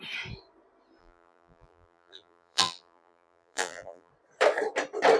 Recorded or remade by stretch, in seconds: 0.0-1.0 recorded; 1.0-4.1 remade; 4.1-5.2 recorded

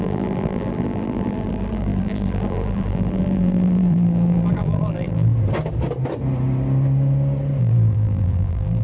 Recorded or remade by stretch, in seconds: 0.0-5.3 remade; 5.3-7.6 recorded; 7.6-8.8 remade